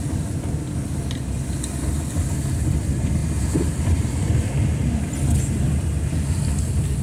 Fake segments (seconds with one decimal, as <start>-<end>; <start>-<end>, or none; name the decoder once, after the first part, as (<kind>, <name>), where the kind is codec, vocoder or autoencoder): 3.2-4.5 (vocoder, BigVGAN v2)